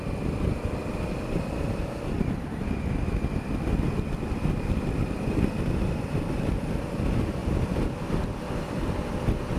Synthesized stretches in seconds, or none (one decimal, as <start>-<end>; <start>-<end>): none